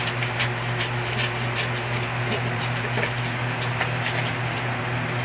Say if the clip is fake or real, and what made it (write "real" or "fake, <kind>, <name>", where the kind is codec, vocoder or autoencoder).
real